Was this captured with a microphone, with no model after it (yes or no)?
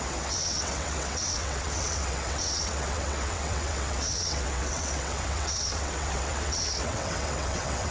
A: no